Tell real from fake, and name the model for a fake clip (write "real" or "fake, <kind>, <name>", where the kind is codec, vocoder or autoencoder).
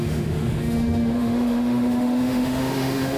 fake, autoencoder, DAC-VAE